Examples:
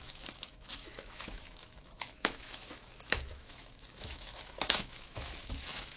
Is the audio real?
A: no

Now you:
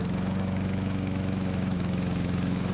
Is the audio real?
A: no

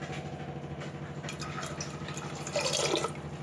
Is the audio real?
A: yes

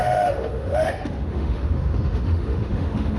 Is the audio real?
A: no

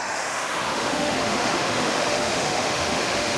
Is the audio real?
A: no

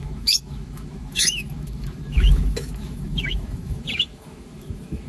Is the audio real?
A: no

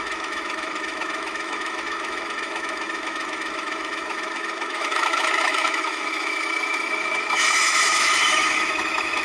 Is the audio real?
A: no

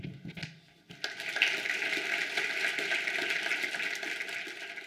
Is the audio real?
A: yes